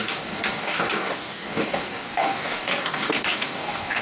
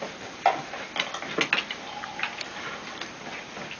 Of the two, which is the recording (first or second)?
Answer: second